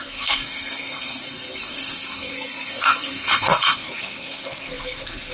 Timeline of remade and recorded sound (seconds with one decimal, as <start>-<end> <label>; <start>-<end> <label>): 0.0-5.3 remade